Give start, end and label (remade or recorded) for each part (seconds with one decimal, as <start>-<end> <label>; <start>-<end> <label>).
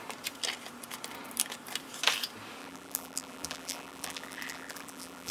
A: 0.0-2.6 recorded; 2.6-5.3 remade